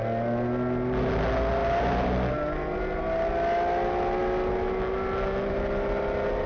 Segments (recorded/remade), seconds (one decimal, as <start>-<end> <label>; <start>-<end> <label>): 0.0-6.5 recorded